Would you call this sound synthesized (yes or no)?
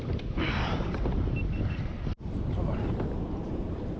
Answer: no